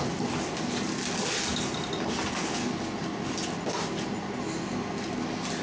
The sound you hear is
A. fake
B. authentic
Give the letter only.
B